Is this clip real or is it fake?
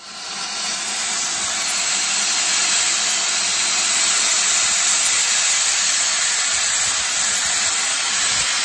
real